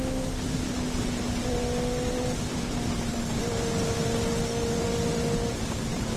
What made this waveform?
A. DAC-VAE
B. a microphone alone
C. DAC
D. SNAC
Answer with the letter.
B